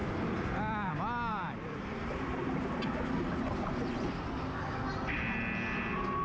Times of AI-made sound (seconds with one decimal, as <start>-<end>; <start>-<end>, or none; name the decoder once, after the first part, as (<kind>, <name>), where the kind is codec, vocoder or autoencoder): 1.3-2.6 (vocoder, BigVGAN v2)